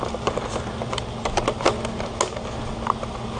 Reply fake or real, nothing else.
real